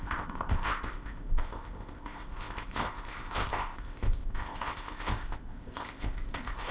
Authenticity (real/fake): fake